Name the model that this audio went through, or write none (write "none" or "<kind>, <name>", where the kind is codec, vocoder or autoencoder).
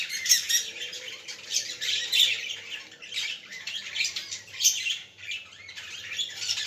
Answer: vocoder, BigVGAN v2